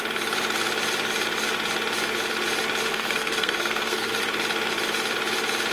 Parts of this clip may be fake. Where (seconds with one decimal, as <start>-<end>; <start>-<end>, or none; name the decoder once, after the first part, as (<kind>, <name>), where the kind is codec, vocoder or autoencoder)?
2.9-4.2 (codec, SNAC)